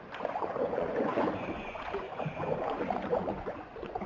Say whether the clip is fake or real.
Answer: fake